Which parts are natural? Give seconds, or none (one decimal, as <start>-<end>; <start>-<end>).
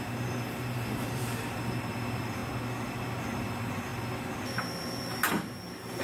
2.4-3.2; 3.9-4.5